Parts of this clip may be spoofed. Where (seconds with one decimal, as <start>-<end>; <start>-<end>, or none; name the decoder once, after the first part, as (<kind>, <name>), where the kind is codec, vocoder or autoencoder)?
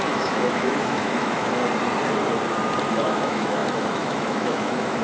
0.0-1.6 (autoencoder, DAC-VAE); 2.8-5.0